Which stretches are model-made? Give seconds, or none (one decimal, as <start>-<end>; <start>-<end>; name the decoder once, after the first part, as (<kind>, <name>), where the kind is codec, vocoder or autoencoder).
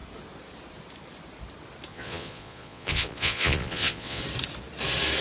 1.9-4.2 (vocoder, Vocos)